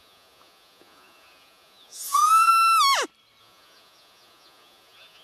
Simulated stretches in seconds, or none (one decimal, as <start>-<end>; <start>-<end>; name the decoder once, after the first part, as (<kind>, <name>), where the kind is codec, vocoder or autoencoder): 0.0-2.5 (vocoder, Vocos); 3.4-5.2